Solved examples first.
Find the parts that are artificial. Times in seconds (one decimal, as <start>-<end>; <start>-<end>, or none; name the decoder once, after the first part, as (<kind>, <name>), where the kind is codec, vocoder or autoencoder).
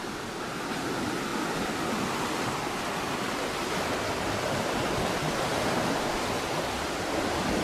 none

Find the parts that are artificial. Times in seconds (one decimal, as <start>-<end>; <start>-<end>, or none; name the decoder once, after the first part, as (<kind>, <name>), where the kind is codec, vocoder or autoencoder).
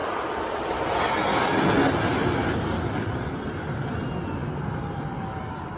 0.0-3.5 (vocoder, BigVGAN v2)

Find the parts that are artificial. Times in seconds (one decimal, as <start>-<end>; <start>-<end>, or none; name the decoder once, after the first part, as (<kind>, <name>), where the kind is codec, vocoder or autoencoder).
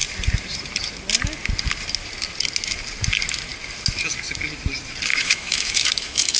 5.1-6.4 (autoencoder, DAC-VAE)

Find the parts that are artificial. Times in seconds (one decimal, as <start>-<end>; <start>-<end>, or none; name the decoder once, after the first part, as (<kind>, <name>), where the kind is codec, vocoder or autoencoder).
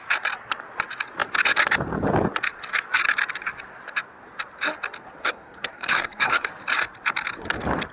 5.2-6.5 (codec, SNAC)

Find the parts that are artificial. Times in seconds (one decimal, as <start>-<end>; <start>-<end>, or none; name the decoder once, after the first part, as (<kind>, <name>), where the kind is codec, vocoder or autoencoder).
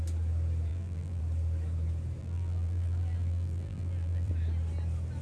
0.7-1.2 (vocoder, BigVGAN v2); 2.2-4.3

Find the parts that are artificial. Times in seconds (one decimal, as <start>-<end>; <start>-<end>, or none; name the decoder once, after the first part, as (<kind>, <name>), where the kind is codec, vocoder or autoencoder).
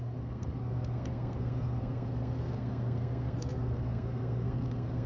0.0-5.1 (codec, SNAC)